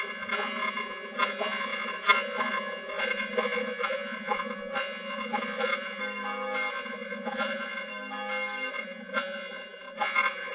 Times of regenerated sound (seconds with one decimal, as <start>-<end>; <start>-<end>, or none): 0.0-6.0; 6.7-7.9; 8.7-10.5